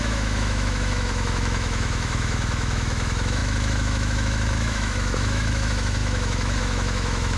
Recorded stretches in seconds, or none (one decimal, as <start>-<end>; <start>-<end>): none